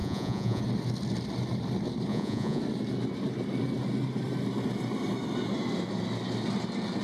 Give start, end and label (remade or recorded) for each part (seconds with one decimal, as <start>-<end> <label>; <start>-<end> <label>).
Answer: 0.0-0.6 remade; 0.6-2.1 recorded; 2.1-2.6 remade; 2.6-7.0 recorded